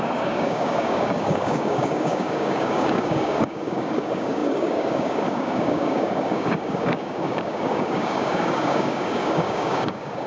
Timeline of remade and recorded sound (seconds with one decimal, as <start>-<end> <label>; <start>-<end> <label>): 0.0-10.3 remade